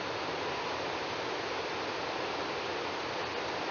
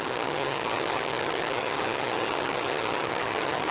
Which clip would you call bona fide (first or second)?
first